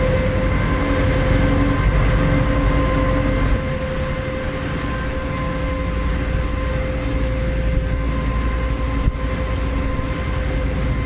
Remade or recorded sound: recorded